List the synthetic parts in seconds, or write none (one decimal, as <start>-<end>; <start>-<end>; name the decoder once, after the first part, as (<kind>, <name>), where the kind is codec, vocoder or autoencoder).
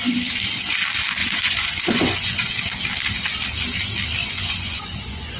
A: 1.2-2.5 (vocoder, Vocos); 4.2-5.4